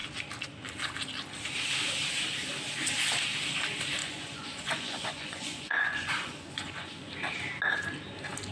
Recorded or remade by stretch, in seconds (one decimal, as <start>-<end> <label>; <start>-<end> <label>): 0.0-4.0 recorded; 4.0-7.1 remade; 7.1-8.5 recorded